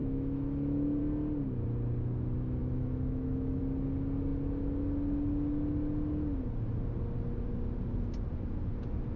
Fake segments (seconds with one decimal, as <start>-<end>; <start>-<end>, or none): 0.0-1.0; 2.6-3.6